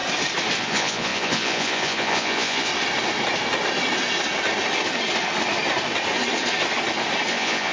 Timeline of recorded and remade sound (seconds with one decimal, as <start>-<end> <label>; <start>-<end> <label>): 0.0-0.6 recorded; 0.6-2.7 remade; 2.7-7.3 recorded; 7.3-7.7 remade